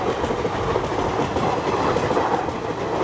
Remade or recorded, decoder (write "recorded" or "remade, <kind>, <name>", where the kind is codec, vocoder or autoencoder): recorded